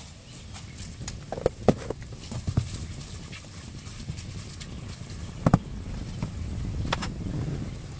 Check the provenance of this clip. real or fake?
real